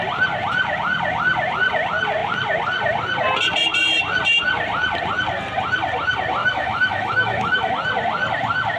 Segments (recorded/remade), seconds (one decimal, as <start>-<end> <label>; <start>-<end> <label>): 0.0-6.4 recorded; 6.4-7.7 remade; 7.7-8.8 recorded